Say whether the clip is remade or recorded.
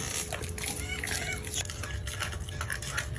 recorded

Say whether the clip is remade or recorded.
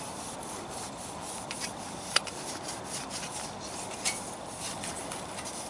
recorded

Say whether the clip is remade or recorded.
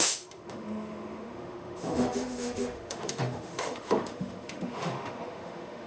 remade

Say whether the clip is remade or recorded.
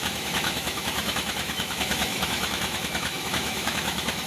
remade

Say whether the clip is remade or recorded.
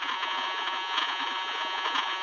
remade